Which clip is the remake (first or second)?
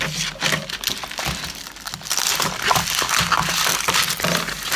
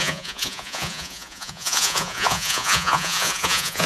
second